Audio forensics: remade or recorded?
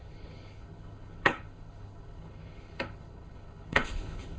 remade